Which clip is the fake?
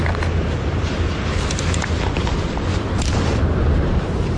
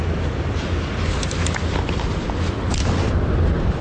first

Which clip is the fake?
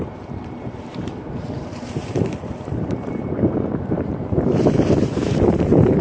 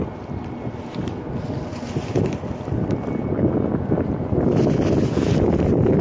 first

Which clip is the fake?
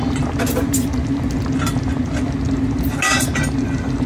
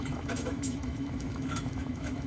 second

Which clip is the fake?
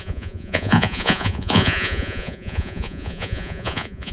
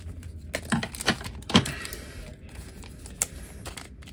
first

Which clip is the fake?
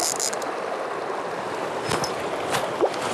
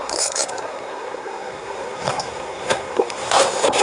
second